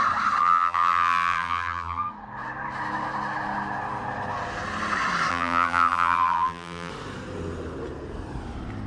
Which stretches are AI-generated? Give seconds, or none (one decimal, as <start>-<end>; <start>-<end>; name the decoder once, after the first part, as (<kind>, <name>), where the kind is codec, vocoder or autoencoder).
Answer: 0.4-2.1 (vocoder, BigVGAN v2); 5.3-6.9